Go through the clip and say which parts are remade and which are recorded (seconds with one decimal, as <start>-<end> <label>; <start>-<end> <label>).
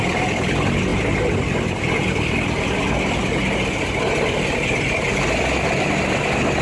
0.0-6.6 recorded